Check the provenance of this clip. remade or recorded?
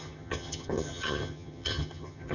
remade